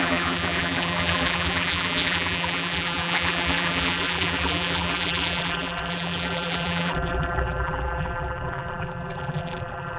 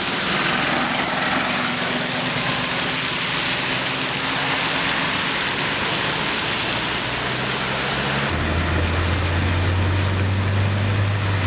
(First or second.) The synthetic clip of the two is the first